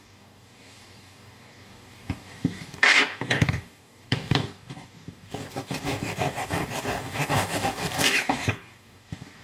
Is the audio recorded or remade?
remade